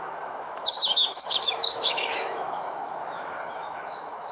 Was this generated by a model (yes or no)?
yes